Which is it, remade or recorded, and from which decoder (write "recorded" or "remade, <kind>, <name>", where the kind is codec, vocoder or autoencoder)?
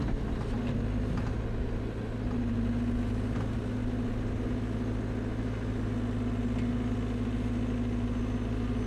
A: recorded